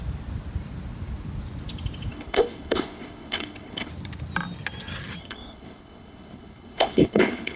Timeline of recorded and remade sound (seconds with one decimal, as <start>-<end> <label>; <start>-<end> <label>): 0.0-2.1 recorded; 2.1-3.9 remade; 3.9-5.2 recorded; 5.2-7.6 remade